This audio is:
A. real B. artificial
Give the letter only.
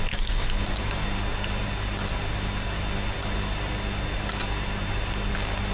A